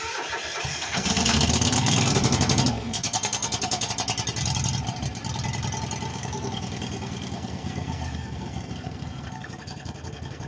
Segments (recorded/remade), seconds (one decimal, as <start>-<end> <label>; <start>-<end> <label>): 0.0-0.7 recorded; 0.7-3.9 remade; 3.9-6.1 recorded; 6.1-10.5 remade